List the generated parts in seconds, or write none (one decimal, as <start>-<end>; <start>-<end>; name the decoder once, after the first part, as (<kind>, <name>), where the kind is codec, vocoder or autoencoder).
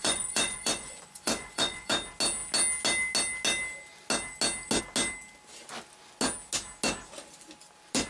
0.0-1.9 (vocoder, Vocos)